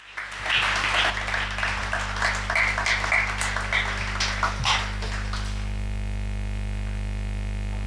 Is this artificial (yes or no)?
no